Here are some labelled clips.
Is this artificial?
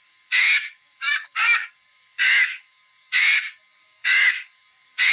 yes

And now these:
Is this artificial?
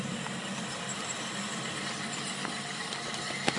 no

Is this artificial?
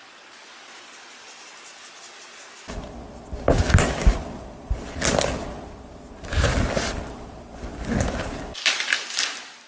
no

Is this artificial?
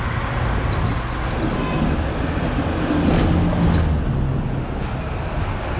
no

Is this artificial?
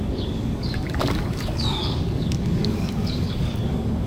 yes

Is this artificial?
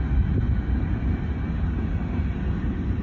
no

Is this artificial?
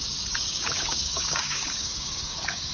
yes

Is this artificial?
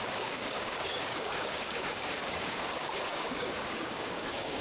yes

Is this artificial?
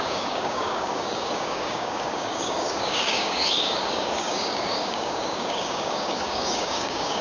yes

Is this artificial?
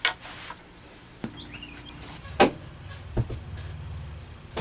no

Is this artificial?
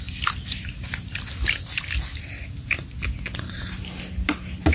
no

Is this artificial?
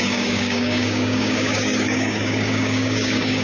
yes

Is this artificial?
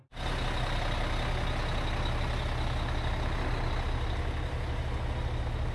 no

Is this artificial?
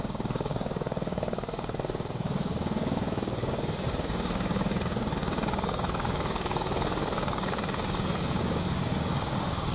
yes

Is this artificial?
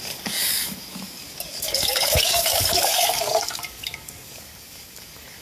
yes